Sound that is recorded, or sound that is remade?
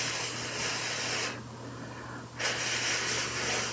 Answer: recorded